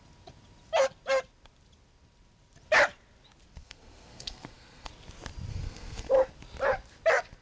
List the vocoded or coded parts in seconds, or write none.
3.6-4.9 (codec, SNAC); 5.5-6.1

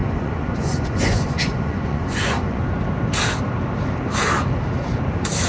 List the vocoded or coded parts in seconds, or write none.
0.0-2.6 (vocoder, Vocos)

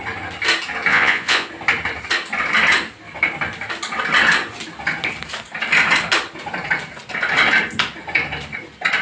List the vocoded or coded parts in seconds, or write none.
0.9-1.5 (vocoder, Vocos)

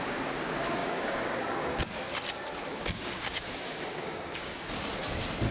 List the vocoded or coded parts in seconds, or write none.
0.8-1.9 (codec, DAC); 2.7-4.7

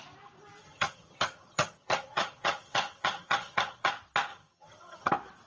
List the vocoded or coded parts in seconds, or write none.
0.6-3.9 (vocoder, HiFi-GAN); 4.3-5.1

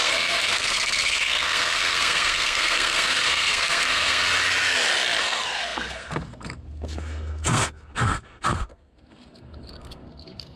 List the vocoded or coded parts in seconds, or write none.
0.0-4.2 (codec, SNAC); 5.2-10.6

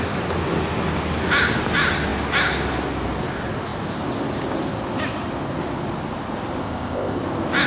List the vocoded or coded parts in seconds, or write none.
6.6-7.2 (codec, ZipCodec)

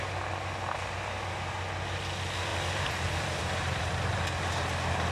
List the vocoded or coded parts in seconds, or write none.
2.5-3.9 (vocoder, BigVGAN v2)